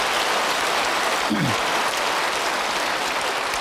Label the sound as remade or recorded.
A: recorded